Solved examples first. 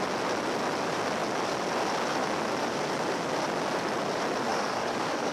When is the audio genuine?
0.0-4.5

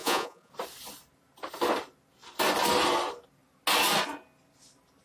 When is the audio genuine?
0.5-5.0

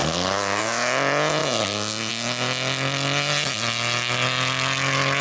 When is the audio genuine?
0.0-5.2

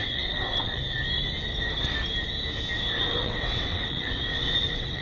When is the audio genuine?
0.8-3.0